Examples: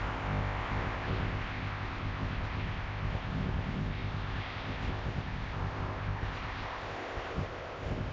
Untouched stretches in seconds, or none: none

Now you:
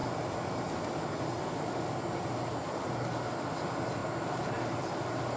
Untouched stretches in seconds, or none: 0.0-5.4